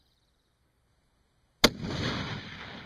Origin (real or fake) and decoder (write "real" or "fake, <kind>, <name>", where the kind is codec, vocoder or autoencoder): real